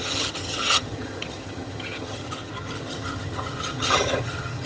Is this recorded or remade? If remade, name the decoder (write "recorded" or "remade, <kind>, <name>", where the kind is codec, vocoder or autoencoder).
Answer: remade, vocoder, HiFi-GAN